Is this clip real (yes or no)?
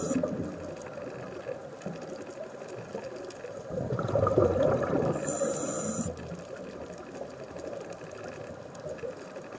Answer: yes